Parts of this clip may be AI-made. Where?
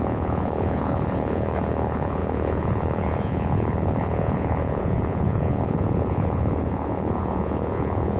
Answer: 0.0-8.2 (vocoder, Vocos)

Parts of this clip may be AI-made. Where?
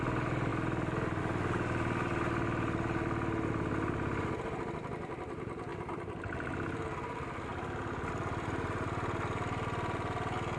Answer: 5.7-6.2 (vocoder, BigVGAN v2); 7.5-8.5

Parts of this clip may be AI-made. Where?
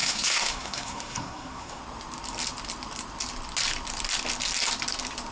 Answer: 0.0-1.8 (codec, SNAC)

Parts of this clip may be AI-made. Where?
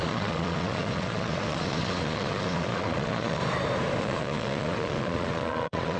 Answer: 0.0-3.4 (vocoder, Vocos); 4.0-6.0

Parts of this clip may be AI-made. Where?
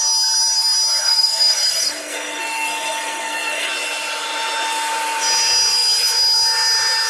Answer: 1.0-3.7 (codec, SNAC)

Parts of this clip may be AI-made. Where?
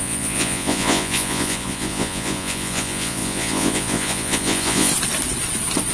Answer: 0.0-4.9 (vocoder, Vocos)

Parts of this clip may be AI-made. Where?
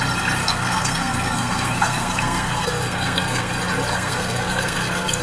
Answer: 0.4-3.5 (codec, SNAC); 3.9-5.2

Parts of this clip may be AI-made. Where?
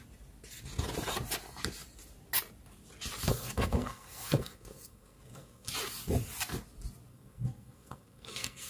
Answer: 3.3-5.7 (codec, SNAC); 7.1-8.7